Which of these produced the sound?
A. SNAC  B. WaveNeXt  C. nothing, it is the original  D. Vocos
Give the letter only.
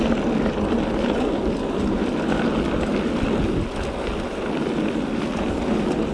C